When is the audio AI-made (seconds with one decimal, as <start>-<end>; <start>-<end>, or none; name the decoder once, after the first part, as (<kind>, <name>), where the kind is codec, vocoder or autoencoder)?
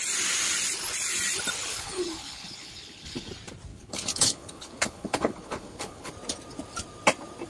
1.7-3.3 (codec, HILCodec); 3.7-6.1